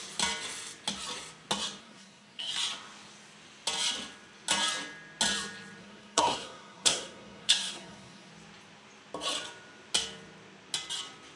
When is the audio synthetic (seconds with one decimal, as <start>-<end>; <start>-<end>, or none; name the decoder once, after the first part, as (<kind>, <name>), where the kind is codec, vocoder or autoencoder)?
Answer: 1.8-2.5 (codec, SNAC); 5.8-8.3